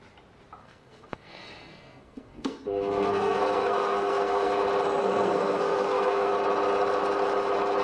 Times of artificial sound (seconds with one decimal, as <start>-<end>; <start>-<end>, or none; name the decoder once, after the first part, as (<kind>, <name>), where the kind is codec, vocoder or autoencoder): 0.6-4.6 (codec, SNAC); 5.0-6.3